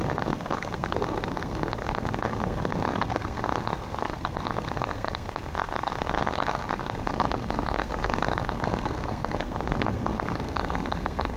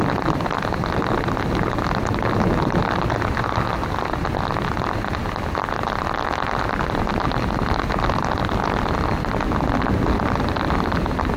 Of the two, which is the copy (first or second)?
first